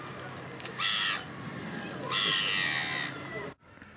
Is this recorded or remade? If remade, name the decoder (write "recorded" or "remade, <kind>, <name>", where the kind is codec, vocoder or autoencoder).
recorded